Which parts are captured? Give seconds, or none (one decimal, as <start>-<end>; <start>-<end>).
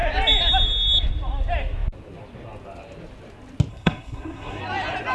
0.0-3.7; 4.6-5.1